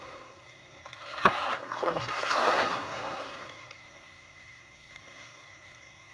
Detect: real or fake fake